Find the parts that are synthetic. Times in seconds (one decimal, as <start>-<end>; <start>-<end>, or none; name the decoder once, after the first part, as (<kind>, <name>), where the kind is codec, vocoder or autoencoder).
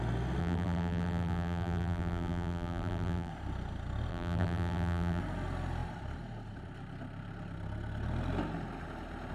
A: 0.4-3.3 (vocoder, BigVGAN v2); 4.1-5.2